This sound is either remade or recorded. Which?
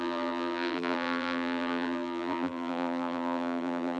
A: remade